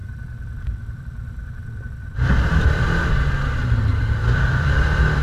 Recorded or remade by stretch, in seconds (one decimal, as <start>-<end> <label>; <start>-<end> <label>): 0.0-3.1 remade; 3.1-3.9 recorded; 3.9-5.2 remade